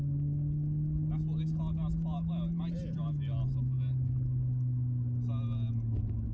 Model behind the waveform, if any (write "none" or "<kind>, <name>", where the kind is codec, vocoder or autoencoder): none